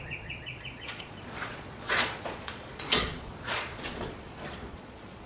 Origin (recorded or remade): remade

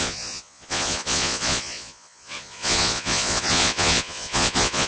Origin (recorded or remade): remade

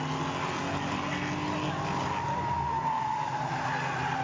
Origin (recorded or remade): recorded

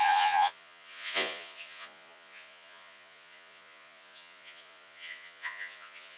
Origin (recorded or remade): remade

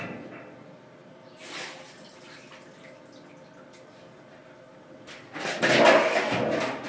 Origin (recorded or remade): recorded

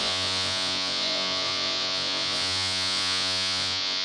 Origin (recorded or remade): remade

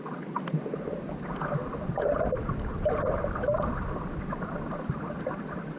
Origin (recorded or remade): recorded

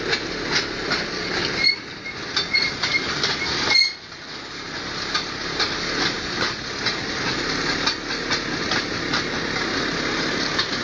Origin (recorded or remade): recorded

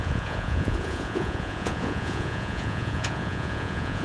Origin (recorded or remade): remade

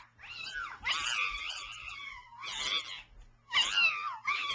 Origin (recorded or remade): recorded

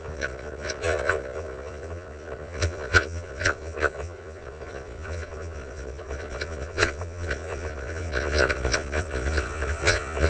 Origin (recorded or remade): remade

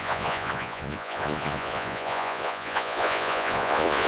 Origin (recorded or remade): remade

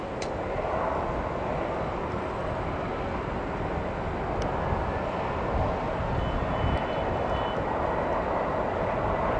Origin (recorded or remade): recorded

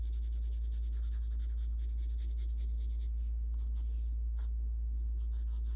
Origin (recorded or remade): recorded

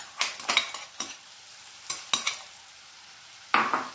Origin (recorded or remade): recorded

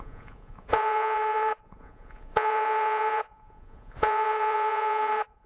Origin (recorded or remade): remade